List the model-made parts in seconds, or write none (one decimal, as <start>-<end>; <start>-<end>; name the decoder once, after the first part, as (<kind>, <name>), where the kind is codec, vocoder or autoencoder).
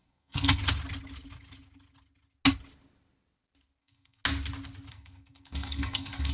0.0-0.6 (codec, SNAC); 3.8-4.2; 4.9-6.3